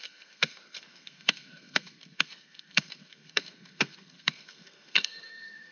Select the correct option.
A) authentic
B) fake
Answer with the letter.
B